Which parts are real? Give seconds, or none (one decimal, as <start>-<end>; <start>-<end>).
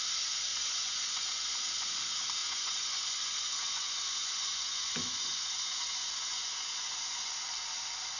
0.0-0.5; 1.9-2.4; 7.3-8.2